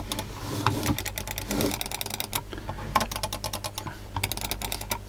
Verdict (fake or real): real